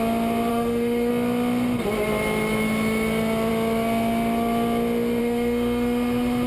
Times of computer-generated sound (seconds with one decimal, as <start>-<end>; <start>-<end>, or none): 0.5-1.1; 5.2-6.5